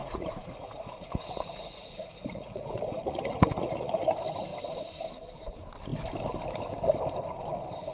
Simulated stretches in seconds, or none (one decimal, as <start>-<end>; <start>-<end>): 0.0-4.1